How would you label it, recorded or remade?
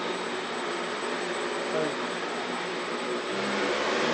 recorded